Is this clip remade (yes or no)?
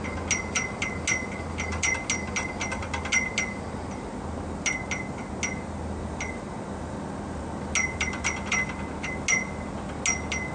no